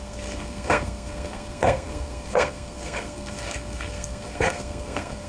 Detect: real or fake fake